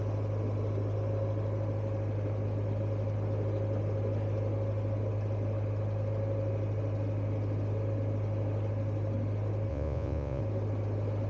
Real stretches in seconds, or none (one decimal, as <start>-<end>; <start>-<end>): 0.0-9.7; 10.4-11.3